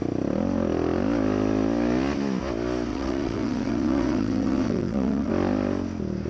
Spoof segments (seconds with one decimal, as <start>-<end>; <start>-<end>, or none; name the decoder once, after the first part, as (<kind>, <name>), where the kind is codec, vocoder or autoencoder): 2.9-5.3 (vocoder, WaveNeXt)